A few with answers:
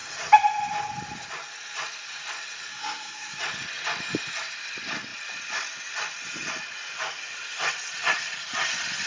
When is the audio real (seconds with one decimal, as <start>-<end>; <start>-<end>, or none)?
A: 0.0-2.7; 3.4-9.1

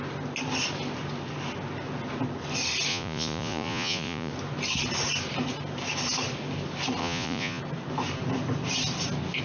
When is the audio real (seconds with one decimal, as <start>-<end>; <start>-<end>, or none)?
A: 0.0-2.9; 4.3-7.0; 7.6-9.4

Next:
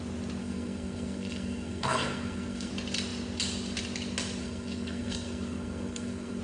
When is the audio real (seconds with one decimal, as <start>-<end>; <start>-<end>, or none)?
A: 0.0-0.4; 2.7-4.4

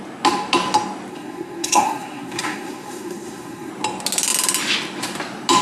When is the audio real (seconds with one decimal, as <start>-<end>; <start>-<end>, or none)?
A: 0.0-1.1; 3.7-5.6